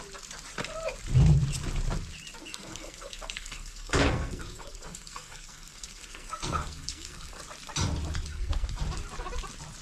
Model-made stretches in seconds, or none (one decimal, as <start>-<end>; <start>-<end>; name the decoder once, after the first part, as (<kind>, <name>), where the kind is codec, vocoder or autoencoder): 2.4-7.4 (codec, SNAC); 8.3-8.8